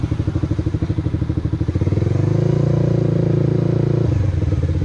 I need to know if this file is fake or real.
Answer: real